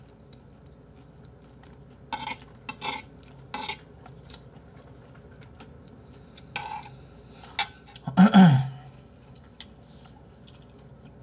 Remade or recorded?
recorded